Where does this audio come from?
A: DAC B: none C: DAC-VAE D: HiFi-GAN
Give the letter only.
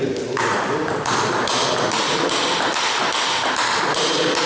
B